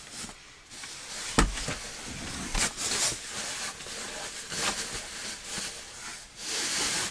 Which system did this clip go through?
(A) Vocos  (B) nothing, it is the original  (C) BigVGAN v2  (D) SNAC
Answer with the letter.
B